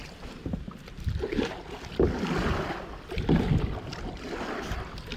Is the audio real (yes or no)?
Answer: yes